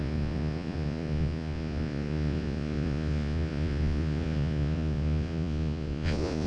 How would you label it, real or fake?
fake